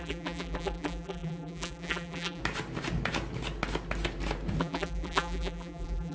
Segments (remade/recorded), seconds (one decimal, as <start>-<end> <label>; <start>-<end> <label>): 0.0-2.4 remade; 2.4-4.6 recorded; 4.6-6.1 remade